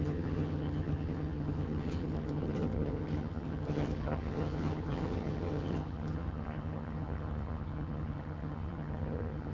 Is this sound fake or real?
fake